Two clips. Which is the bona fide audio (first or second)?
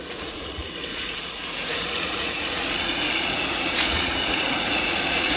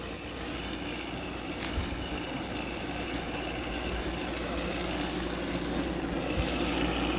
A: second